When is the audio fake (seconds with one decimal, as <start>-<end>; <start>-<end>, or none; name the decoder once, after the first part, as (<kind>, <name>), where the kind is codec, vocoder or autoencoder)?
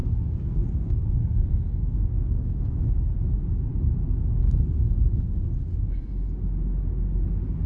0.0-2.9 (codec, SNAC)